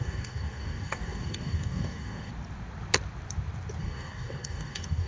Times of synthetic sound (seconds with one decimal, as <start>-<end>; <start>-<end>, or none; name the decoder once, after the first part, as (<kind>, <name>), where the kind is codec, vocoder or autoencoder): 0.0-2.3 (codec, DAC); 3.8-5.1

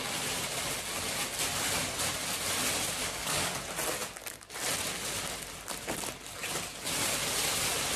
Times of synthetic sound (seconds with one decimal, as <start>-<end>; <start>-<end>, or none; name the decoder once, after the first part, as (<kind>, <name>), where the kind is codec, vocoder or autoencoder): 3.0-3.5 (codec, DAC)